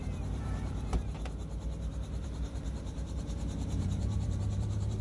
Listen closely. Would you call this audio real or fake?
fake